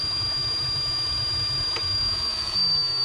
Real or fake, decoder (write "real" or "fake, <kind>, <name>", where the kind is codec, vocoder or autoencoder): fake, autoencoder, DAC-VAE